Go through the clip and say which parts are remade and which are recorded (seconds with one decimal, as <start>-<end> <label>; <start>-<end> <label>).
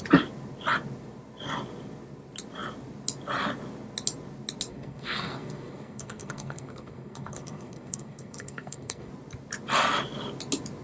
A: 0.0-4.7 recorded; 4.7-9.1 remade; 9.1-10.8 recorded